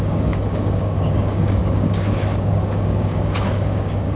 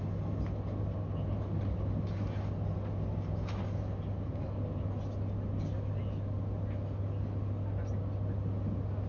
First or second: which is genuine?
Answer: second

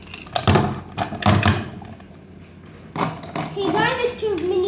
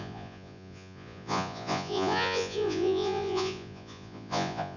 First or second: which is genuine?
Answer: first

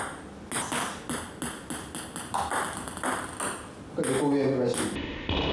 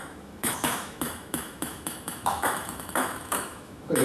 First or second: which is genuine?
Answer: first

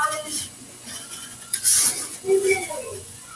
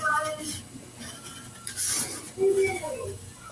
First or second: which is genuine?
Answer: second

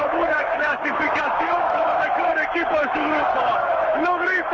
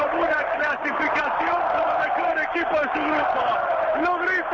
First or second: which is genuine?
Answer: second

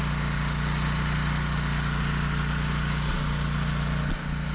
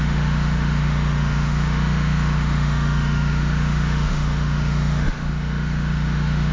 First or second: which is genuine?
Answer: first